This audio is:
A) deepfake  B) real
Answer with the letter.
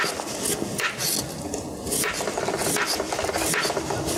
B